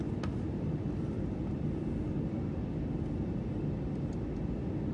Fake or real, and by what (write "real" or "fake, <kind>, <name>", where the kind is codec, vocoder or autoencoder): real